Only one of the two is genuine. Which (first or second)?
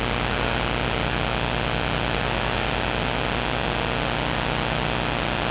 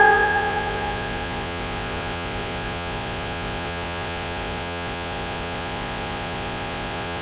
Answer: first